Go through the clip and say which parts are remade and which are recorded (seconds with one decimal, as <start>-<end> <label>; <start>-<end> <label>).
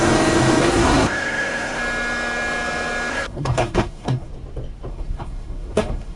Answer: 0.0-0.6 recorded; 0.6-1.8 remade; 1.8-3.1 recorded; 3.1-4.3 remade; 4.3-4.9 recorded; 4.9-6.2 remade